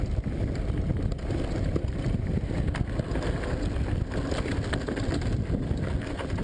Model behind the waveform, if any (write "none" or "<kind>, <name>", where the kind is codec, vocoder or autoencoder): none